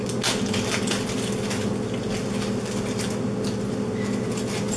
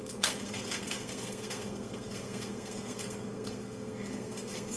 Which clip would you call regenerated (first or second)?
second